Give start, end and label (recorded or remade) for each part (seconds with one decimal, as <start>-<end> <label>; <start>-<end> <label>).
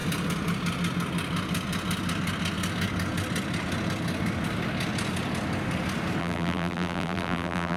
0.0-6.2 recorded; 6.2-7.8 remade